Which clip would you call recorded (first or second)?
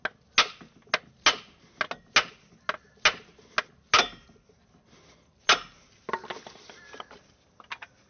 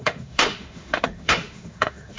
first